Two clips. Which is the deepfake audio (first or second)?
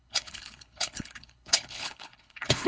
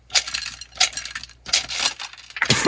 first